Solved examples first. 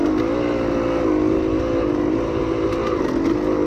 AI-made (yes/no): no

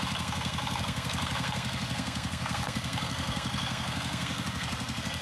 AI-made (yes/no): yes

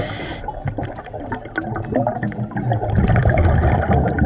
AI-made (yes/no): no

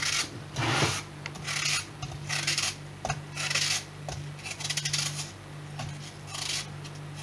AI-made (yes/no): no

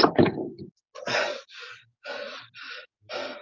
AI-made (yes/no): no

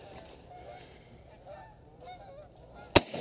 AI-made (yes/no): no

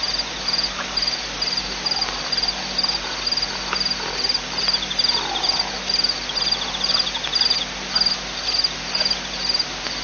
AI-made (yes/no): no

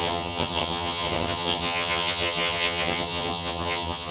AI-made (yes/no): yes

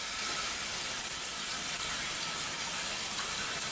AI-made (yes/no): yes